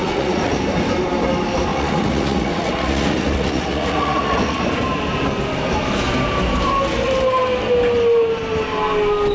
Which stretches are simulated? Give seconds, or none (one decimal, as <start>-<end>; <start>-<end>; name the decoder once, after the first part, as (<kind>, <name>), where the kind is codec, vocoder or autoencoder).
0.0-0.6 (vocoder, Vocos); 1.7-4.6